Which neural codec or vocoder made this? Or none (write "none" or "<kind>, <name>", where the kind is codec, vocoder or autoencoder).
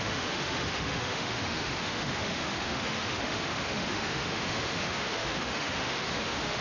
autoencoder, DAC-VAE